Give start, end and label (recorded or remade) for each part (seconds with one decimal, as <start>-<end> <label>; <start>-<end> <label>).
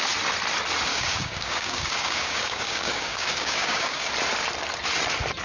0.0-0.9 recorded; 0.9-4.1 remade; 4.1-5.4 recorded